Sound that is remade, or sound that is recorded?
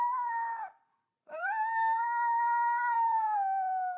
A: remade